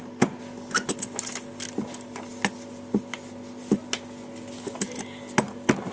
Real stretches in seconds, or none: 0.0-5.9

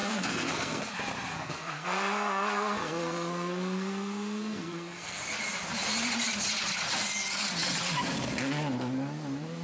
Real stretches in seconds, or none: 0.9-1.3; 5.2-9.6

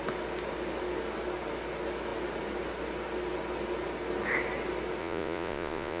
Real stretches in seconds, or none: 0.0-5.0

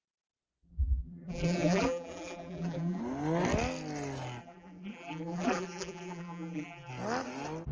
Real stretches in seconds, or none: 3.0-4.4; 6.9-7.7

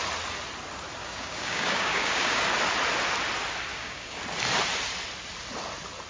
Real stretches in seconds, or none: 0.0-1.0; 2.4-3.7; 4.2-6.1

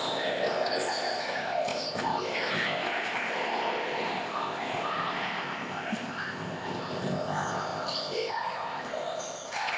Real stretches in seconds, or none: none

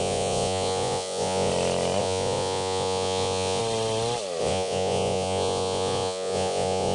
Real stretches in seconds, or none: 1.5-2.0; 3.6-4.4

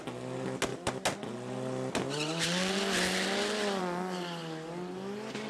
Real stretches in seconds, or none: 0.0-5.5